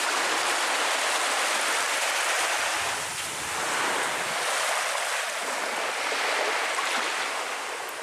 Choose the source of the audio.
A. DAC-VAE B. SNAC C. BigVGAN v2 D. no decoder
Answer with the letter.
D